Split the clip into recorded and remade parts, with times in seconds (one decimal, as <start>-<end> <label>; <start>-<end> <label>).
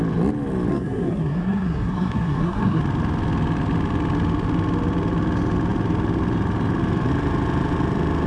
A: 0.0-0.7 recorded; 0.7-2.8 remade; 2.8-8.3 recorded